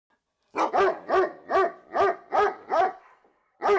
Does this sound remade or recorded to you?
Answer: recorded